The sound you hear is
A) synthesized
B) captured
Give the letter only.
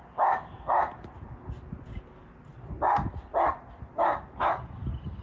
B